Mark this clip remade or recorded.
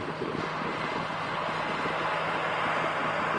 recorded